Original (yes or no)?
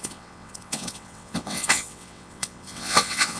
no